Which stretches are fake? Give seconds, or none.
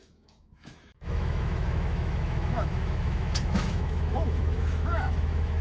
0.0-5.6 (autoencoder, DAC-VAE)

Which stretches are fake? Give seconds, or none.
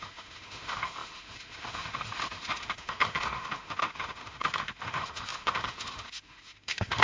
0.0-7.0 (autoencoder, DAC-VAE)